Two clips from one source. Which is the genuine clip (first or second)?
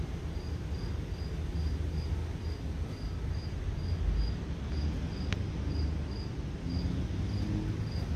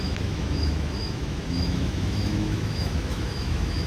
first